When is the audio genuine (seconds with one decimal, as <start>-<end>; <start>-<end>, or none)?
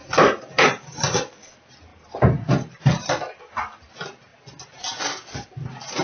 0.0-6.0